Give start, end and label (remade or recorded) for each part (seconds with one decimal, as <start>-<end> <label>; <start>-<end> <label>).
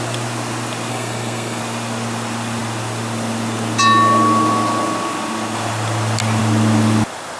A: 0.0-0.9 recorded; 0.9-1.6 remade; 1.6-7.4 recorded